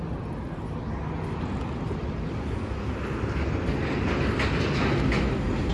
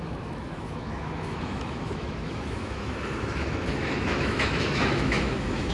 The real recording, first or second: first